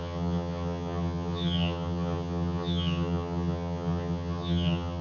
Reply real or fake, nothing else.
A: fake